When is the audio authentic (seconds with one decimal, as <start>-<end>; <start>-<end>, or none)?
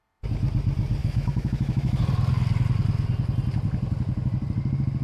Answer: 0.0-1.0; 2.0-5.0